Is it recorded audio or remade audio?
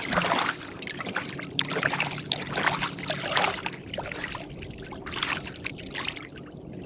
recorded